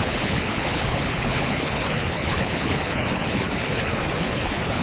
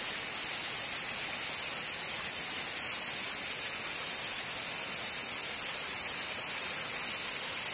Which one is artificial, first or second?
first